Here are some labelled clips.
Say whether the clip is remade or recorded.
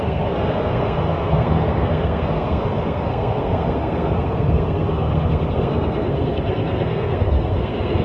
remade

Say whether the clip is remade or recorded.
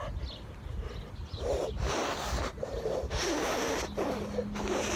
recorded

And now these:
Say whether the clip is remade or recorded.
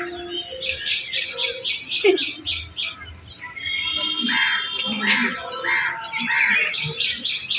recorded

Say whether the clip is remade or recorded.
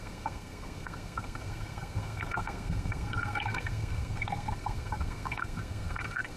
remade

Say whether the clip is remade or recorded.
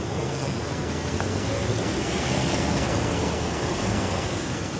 remade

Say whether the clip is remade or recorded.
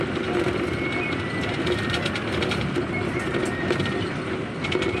recorded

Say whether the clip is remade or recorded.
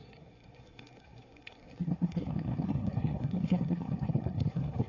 remade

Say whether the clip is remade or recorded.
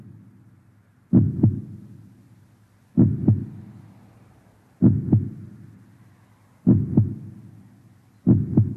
recorded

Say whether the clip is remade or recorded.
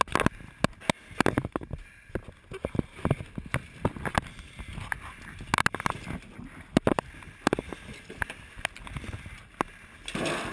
recorded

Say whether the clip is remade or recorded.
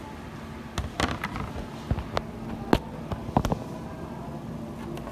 recorded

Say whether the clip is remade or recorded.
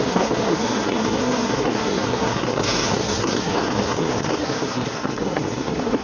remade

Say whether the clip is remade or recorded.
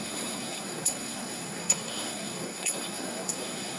remade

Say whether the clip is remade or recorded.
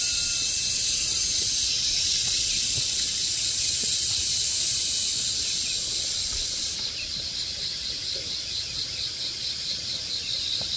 recorded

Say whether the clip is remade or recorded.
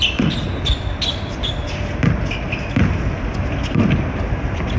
recorded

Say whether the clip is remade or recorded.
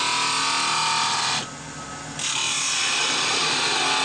recorded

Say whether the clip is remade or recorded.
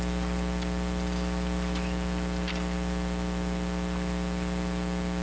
recorded